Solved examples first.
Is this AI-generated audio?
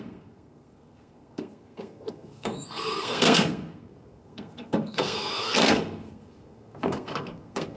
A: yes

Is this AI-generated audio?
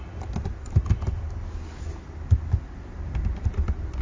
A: no